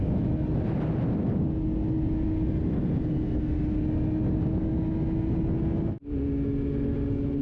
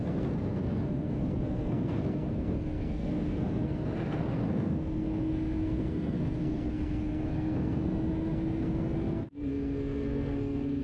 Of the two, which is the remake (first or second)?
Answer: second